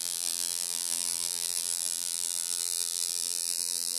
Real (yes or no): no